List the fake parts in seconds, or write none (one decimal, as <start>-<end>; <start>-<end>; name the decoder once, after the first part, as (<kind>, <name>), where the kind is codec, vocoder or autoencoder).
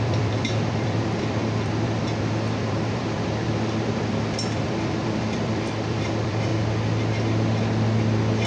0.0-6.5 (vocoder, BigVGAN v2)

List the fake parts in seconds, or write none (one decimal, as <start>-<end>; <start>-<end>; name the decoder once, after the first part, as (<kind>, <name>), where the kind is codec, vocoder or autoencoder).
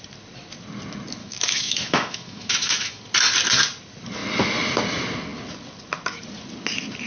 1.2-3.0 (autoencoder, DAC-VAE)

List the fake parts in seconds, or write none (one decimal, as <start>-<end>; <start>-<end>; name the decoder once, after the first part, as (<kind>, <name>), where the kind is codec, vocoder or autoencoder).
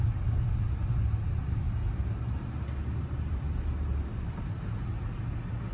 3.9-4.7 (vocoder, BigVGAN v2)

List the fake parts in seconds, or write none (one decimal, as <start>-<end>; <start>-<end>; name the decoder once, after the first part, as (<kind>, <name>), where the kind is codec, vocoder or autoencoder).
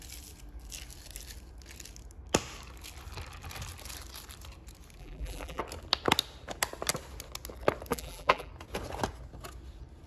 5.0-5.6 (vocoder, BigVGAN v2); 7.9-8.5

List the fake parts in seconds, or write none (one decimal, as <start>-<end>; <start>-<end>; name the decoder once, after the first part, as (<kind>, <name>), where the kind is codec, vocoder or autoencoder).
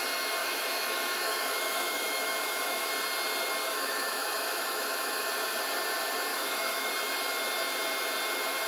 0.4-2.9 (autoencoder, DAC-VAE); 3.6-5.3; 6.3-6.9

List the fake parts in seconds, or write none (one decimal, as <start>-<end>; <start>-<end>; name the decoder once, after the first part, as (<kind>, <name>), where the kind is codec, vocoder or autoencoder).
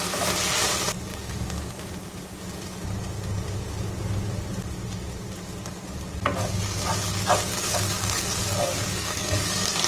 1.1-1.8 (codec, DAC); 7.5-9.9